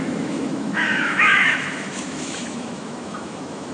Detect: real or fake fake